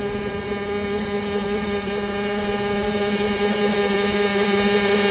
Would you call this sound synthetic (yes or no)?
yes